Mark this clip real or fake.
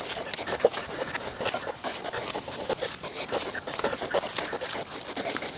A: real